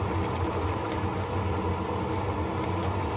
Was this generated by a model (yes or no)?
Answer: no